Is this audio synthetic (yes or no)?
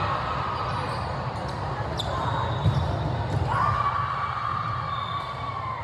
no